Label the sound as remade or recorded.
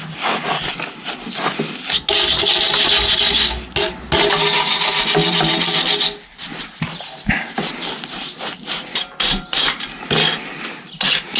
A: recorded